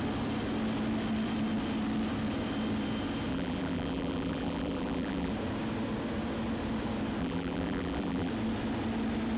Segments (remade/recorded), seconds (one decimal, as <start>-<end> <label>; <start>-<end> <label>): 0.0-3.3 recorded; 3.3-5.3 remade; 5.3-7.2 recorded; 7.2-8.3 remade; 8.3-9.4 recorded